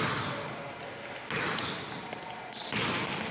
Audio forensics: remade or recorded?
recorded